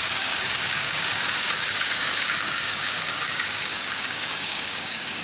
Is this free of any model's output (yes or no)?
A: no